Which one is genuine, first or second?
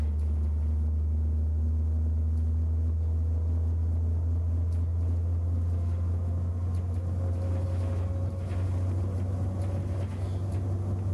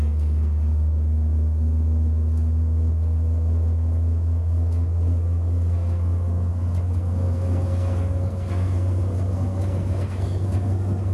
first